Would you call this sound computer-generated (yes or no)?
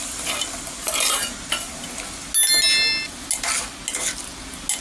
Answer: no